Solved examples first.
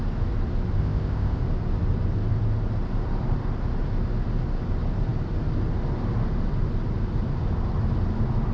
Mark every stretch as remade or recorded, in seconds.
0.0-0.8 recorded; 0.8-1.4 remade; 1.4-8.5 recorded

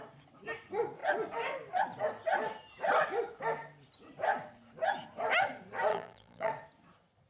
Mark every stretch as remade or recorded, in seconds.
0.0-5.9 recorded; 5.9-6.5 remade; 6.5-7.3 recorded

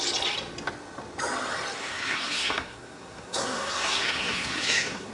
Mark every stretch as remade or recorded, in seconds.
0.0-1.8 recorded; 1.8-5.1 remade

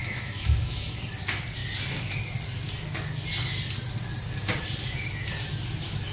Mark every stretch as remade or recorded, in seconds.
0.0-1.0 remade; 1.0-6.1 recorded

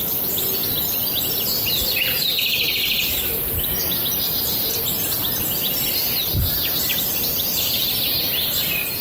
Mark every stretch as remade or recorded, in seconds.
0.0-9.0 recorded